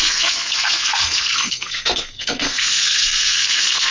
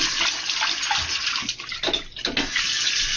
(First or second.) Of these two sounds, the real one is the second